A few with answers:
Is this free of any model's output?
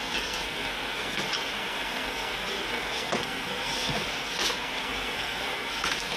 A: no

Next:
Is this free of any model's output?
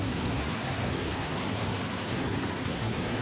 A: no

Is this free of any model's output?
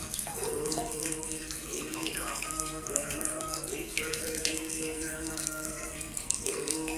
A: no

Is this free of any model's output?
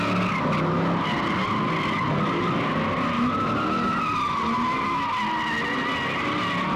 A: yes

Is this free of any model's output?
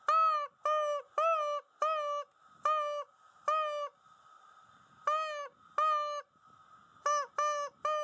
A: yes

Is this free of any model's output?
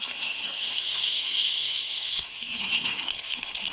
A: no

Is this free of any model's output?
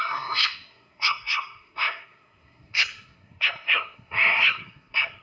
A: no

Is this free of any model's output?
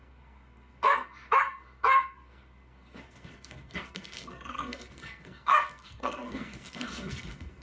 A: no